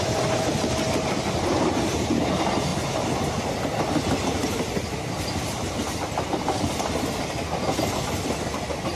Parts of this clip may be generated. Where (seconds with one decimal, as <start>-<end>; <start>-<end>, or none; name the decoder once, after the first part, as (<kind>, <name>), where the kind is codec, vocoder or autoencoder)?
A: none